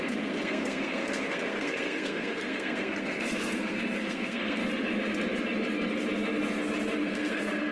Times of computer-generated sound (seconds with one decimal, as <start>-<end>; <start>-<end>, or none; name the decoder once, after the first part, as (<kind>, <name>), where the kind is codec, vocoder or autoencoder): 0.0-4.6 (codec, SNAC); 7.0-7.7